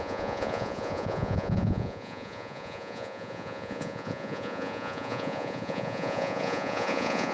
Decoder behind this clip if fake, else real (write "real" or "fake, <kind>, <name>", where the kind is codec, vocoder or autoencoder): fake, vocoder, Vocos